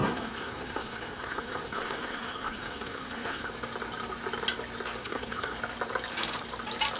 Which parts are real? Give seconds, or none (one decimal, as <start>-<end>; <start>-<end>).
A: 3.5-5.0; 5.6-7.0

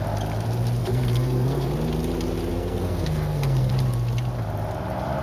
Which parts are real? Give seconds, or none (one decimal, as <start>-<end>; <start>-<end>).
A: 0.0-0.8; 1.7-2.5; 3.7-5.2

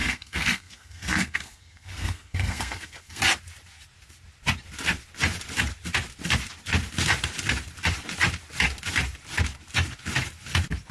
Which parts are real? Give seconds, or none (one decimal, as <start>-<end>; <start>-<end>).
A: 3.2-10.9

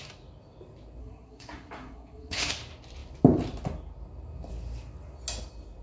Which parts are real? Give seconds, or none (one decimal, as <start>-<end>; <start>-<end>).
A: 0.0-1.0; 2.5-5.8

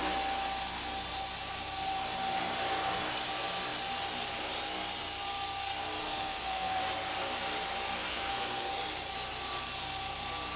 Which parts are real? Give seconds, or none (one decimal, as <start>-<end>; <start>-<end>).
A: 0.0-6.0; 6.8-8.1; 8.7-10.6

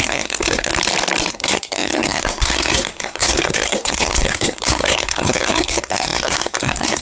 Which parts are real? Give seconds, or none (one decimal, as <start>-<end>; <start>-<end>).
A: 0.7-1.3